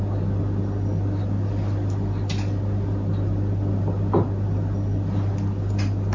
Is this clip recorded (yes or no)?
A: yes